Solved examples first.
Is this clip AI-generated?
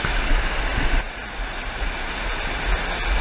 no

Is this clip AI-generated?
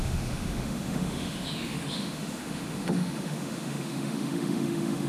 yes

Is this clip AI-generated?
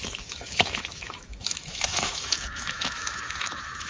yes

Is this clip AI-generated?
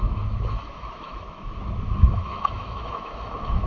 yes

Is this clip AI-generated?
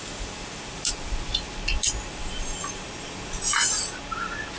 no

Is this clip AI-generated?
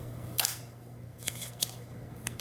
yes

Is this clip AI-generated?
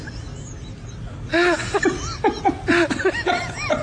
no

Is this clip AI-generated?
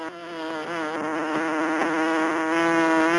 no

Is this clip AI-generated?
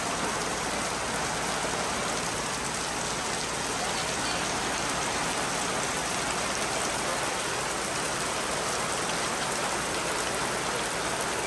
no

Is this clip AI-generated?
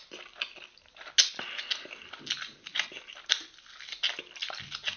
no